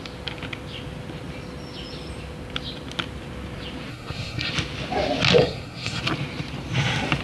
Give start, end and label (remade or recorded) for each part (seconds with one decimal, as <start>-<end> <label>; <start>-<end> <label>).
0.0-3.9 recorded; 3.9-4.5 remade; 4.5-5.4 recorded; 5.4-6.0 remade; 6.0-7.2 recorded